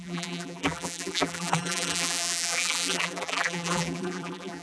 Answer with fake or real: fake